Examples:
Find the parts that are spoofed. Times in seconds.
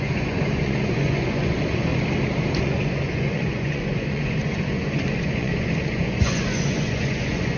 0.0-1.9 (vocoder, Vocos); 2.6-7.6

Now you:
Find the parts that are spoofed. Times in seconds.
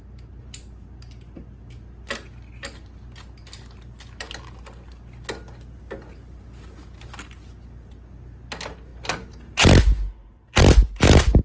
none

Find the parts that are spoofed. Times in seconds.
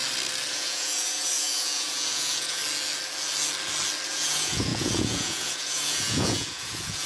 0.5-2.6 (vocoder, Vocos); 4.1-7.1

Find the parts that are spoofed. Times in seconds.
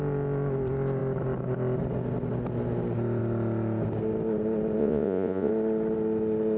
4.8-5.5 (vocoder, Vocos)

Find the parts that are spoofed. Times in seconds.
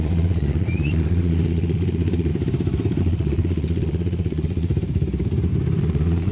0.0-2.3 (vocoder, Vocos); 3.0-4.7; 5.8-6.3